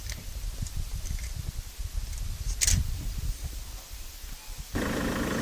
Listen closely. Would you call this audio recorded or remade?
recorded